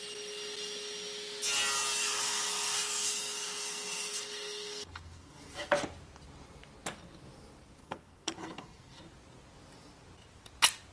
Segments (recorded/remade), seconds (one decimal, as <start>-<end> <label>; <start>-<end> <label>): 0.0-2.0 recorded; 2.0-5.7 remade; 5.7-7.8 recorded; 7.8-9.0 remade; 9.0-10.9 recorded